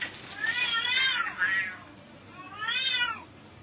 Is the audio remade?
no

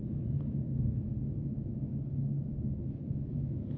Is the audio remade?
yes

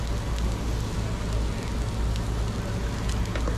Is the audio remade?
no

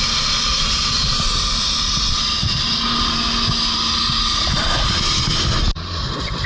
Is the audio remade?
no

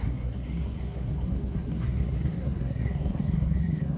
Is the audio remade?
yes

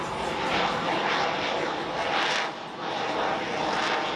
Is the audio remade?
no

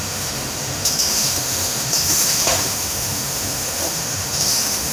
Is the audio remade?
yes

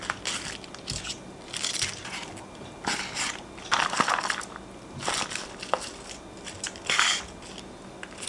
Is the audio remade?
no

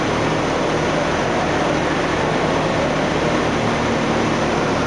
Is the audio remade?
no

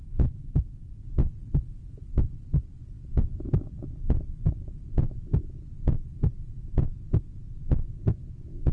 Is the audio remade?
no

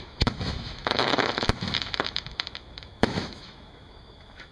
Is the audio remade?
yes